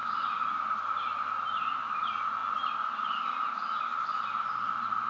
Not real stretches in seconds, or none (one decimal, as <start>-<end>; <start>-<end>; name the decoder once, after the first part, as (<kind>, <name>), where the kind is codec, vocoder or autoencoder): none